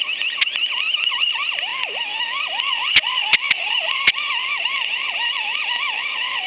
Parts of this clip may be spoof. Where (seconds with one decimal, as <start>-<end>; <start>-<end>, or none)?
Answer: none